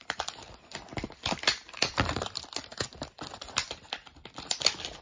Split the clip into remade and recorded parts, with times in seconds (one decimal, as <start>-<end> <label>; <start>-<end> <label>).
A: 0.0-2.7 remade; 2.7-3.6 recorded; 3.6-5.0 remade